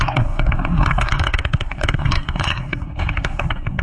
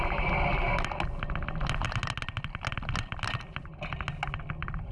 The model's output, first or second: first